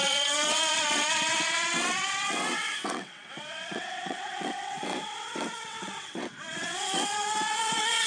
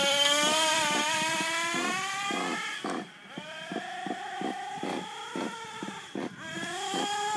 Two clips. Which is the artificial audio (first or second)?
first